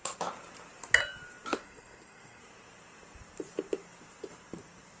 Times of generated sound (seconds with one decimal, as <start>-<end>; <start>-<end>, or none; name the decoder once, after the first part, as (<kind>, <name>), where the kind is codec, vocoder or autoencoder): 1.6-2.4 (codec, SNAC)